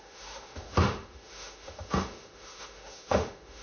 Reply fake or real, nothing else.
fake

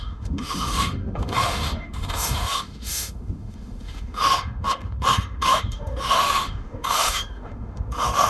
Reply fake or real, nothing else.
fake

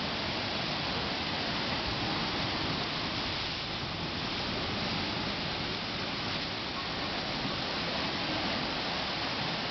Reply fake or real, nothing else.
real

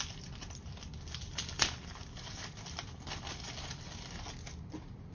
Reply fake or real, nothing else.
real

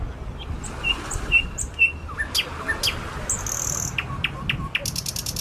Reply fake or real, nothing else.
real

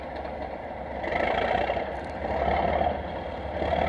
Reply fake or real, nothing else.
real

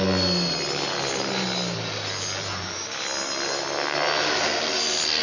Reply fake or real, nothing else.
real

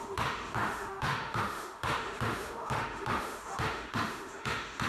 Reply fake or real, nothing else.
fake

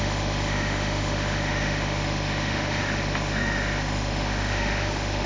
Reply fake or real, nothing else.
fake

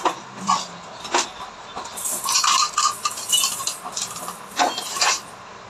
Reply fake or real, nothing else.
real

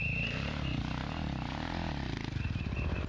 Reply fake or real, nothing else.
real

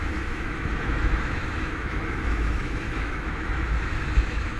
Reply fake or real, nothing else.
fake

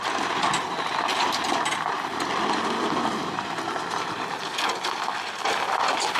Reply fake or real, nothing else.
real